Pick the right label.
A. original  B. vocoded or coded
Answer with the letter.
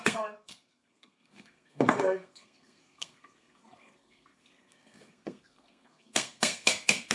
B